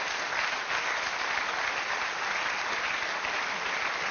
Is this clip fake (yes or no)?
no